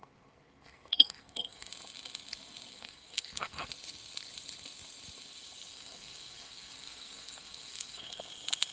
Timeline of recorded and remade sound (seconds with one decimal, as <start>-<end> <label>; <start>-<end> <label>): 0.0-1.7 remade; 1.7-2.7 recorded; 2.7-3.7 remade; 3.7-5.7 recorded; 5.7-8.2 remade; 8.2-8.7 recorded